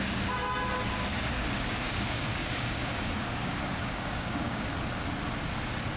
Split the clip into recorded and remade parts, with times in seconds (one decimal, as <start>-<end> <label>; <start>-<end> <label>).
0.0-1.1 recorded; 1.1-4.7 remade; 4.7-6.0 recorded